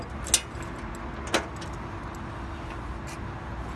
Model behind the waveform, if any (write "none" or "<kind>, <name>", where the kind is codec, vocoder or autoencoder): none